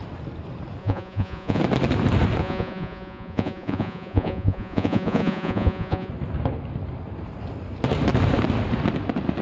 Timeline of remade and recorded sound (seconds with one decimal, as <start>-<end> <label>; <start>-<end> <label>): 0.0-0.8 recorded; 0.8-1.6 remade; 1.6-2.4 recorded; 2.4-6.1 remade; 6.1-9.4 recorded